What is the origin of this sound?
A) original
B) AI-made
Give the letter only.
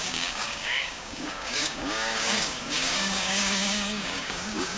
B